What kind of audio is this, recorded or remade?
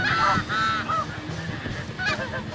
recorded